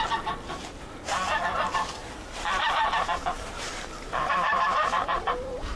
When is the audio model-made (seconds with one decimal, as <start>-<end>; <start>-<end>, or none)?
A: 2.0-5.8